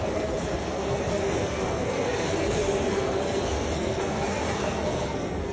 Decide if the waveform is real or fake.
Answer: fake